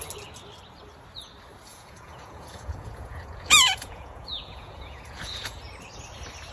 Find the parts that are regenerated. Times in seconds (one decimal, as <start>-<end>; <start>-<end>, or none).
1.7-5.6